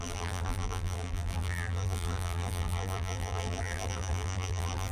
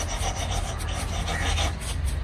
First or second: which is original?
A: second